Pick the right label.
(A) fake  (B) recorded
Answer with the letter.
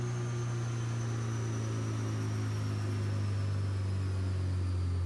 B